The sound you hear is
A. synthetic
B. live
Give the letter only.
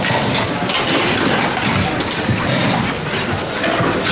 B